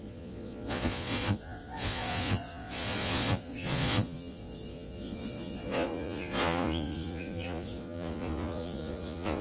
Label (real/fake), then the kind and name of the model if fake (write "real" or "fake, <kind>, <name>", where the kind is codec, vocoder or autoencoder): fake, vocoder, Vocos